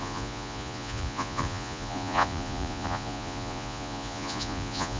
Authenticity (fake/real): fake